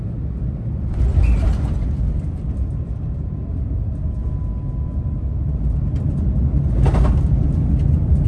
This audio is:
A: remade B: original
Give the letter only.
B